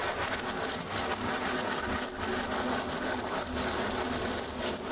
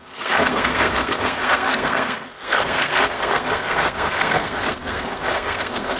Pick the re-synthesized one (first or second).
second